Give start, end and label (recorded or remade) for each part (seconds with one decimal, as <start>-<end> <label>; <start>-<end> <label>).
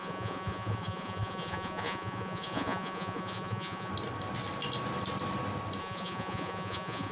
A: 0.0-3.9 remade; 3.9-5.8 recorded; 5.8-7.1 remade